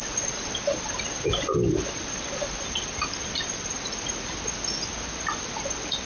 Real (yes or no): yes